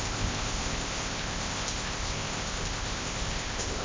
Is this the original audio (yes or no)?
no